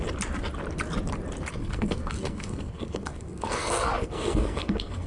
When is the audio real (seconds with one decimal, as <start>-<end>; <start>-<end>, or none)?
0.0-1.6

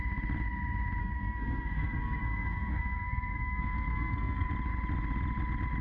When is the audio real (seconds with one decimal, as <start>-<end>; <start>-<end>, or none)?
0.0-1.0; 4.5-5.8

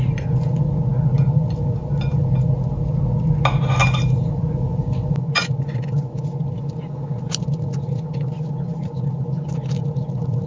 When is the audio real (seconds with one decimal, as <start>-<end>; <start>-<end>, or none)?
0.0-10.5

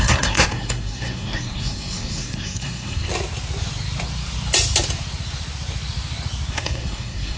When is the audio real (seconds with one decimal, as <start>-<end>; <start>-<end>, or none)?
3.1-6.5

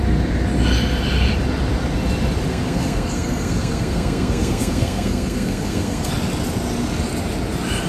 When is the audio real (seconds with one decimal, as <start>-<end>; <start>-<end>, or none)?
0.0-2.5; 6.1-7.9

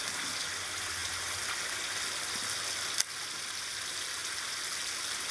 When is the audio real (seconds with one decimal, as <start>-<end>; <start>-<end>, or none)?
0.0-5.3

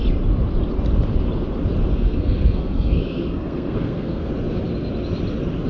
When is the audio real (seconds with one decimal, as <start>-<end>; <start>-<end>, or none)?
0.0-1.9; 4.3-5.7

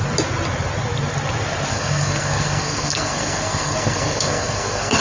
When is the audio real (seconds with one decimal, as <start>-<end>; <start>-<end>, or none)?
0.0-1.7